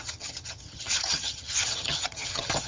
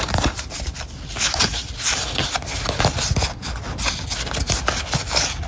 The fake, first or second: first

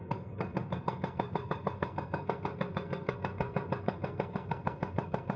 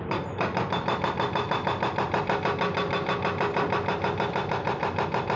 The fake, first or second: first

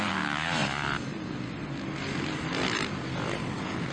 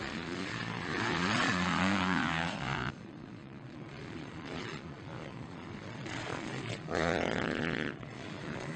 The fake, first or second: second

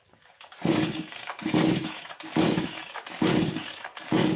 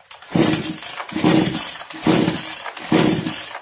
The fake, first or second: first